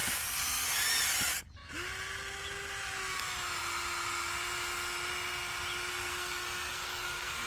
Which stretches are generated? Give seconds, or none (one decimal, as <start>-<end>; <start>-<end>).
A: 5.9-7.5